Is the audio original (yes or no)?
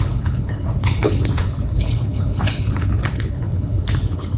no